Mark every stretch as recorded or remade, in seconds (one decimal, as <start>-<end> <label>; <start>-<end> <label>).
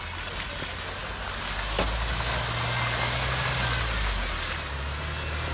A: 0.0-5.5 recorded